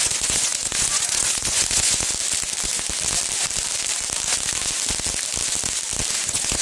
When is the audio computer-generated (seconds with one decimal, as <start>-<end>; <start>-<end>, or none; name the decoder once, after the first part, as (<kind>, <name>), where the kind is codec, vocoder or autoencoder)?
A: 0.0-2.1 (vocoder, Vocos); 6.1-6.6